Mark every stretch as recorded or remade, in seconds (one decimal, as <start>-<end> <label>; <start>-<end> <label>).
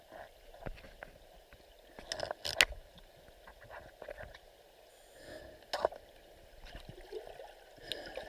0.0-4.9 recorded; 4.9-5.4 remade; 5.4-8.3 recorded